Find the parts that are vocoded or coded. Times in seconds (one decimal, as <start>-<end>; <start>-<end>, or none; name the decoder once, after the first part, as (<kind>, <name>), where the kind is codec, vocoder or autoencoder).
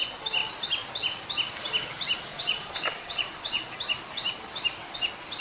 2.3-3.7 (vocoder, Vocos)